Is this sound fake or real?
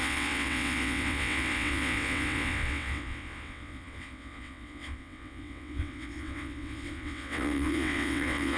fake